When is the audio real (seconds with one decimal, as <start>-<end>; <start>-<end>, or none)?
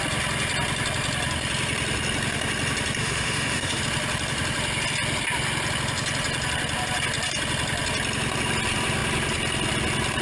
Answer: 0.0-3.0; 3.8-10.2